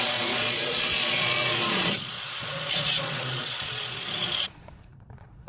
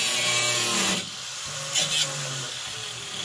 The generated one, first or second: first